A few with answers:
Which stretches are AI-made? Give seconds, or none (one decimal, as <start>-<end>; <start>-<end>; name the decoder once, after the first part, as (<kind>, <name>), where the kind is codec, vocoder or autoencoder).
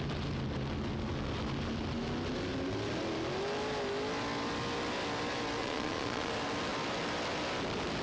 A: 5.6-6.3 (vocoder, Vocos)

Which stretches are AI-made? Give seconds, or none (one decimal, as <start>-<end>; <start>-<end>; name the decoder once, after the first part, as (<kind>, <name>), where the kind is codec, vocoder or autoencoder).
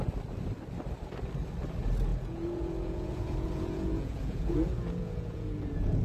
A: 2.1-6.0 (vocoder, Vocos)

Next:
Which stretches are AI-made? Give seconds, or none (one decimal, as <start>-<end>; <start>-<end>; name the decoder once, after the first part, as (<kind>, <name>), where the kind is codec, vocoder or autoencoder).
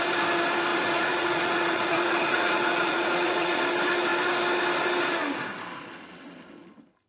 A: 0.7-3.6 (vocoder, Vocos)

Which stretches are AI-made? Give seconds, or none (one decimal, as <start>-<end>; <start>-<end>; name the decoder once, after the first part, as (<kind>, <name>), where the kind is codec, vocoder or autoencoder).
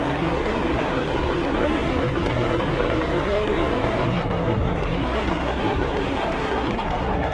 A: 0.0-7.3 (codec, SNAC)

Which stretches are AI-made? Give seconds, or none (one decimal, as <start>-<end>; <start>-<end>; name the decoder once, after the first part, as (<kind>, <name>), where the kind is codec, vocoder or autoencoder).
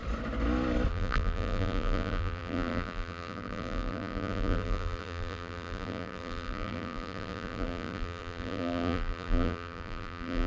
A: 0.9-10.5 (vocoder, BigVGAN v2)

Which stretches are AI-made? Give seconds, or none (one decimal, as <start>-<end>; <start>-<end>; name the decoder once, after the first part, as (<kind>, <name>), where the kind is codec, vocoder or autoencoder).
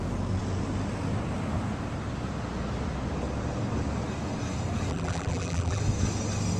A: 4.9-5.8 (vocoder, BigVGAN v2)